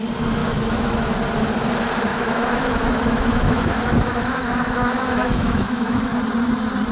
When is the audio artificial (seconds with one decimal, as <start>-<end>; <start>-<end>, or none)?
0.4-1.1; 2.1-6.2

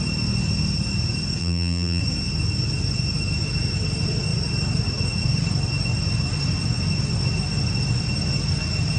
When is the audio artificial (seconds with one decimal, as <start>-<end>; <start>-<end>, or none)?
1.4-2.0

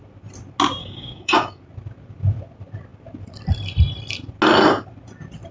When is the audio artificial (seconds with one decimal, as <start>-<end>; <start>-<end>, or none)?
0.8-1.6

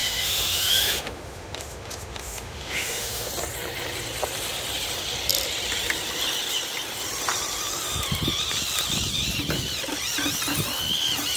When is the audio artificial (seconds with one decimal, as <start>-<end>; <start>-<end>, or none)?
0.0-3.3

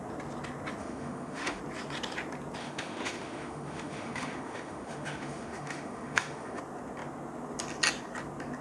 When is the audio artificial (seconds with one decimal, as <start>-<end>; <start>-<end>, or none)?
0.8-1.6; 2.6-6.6

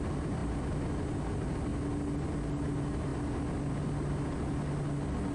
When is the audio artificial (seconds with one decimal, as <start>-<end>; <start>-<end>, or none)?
none

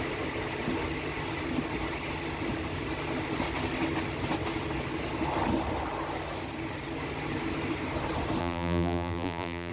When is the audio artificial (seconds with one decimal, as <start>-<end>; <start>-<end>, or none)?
8.4-9.7